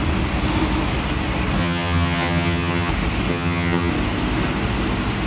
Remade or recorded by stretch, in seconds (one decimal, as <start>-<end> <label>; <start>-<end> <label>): 0.0-1.6 recorded; 1.6-2.9 remade; 2.9-3.3 recorded; 3.3-3.9 remade; 3.9-5.3 recorded